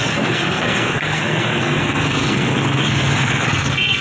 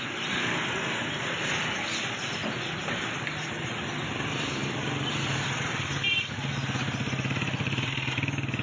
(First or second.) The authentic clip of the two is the second